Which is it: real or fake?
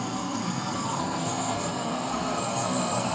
fake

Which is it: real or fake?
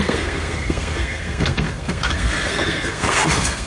fake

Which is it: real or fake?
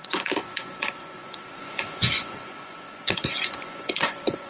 fake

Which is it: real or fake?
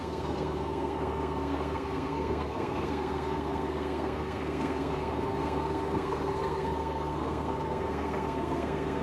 fake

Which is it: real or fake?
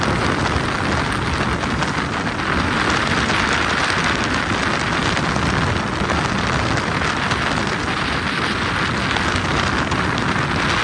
real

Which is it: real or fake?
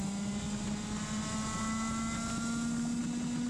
real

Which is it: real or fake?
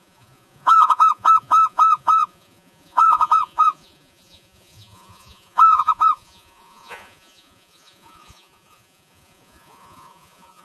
fake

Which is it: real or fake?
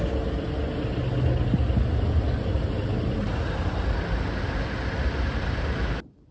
real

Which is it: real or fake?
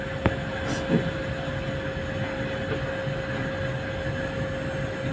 real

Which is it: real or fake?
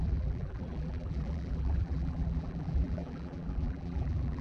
fake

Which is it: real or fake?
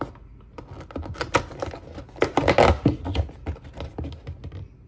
real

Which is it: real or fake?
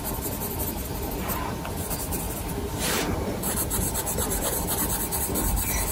fake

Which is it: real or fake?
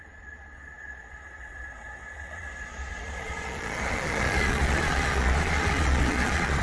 fake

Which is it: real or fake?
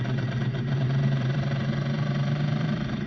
fake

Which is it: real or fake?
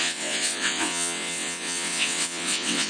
fake